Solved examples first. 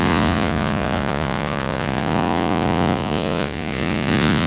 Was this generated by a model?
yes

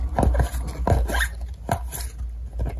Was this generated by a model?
no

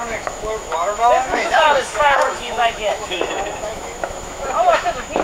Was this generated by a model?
yes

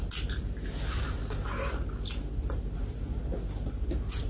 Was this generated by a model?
no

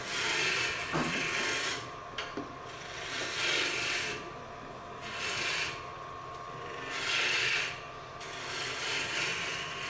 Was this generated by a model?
yes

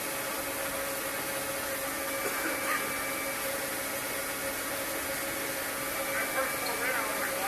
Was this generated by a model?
no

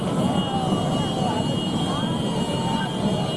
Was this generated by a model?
no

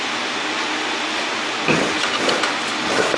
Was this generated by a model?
no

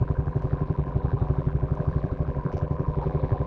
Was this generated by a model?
yes